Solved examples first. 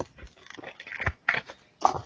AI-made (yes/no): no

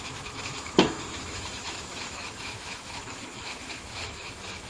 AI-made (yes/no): yes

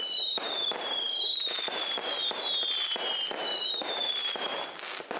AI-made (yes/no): no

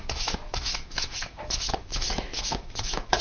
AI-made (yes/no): yes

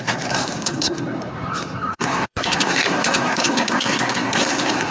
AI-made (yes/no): yes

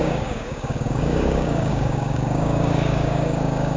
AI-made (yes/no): yes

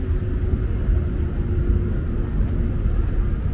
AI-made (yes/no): no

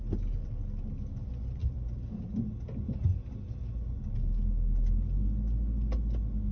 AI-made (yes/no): no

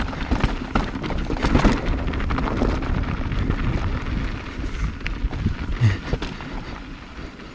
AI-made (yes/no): no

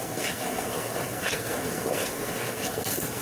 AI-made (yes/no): yes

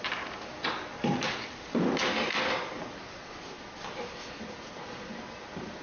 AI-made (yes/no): no